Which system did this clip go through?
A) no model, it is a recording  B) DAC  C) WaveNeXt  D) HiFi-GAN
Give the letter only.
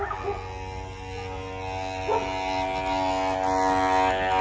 A